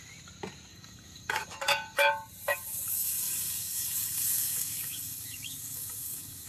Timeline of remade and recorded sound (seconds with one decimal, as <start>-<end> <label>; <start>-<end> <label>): 0.0-0.7 recorded; 0.7-2.1 remade; 2.1-2.5 recorded; 2.5-6.5 remade